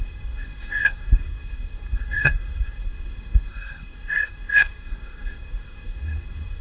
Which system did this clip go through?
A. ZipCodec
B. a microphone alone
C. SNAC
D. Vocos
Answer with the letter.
C